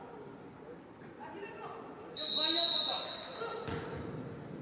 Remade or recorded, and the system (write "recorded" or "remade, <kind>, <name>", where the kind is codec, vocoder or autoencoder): recorded